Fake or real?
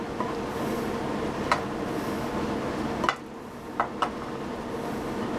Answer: real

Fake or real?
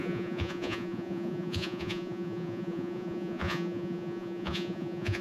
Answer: fake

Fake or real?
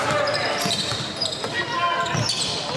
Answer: real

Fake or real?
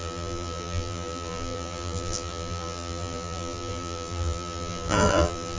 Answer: fake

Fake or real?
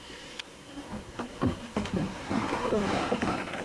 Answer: fake